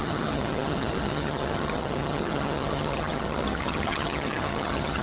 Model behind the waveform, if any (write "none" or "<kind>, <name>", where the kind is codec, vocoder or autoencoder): vocoder, HiFi-GAN